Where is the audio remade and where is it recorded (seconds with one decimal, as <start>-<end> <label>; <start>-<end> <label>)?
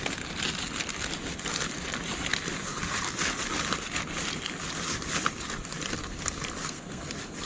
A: 0.0-6.6 recorded; 6.6-7.1 remade; 7.1-7.5 recorded